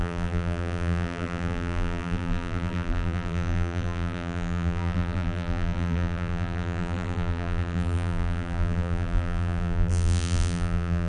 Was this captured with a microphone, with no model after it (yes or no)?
no